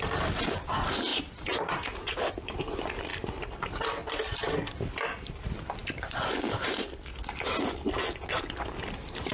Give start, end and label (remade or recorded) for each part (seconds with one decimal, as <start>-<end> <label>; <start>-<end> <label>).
0.0-1.1 recorded; 1.1-2.6 remade; 2.6-3.1 recorded; 3.1-3.7 remade; 3.7-9.3 recorded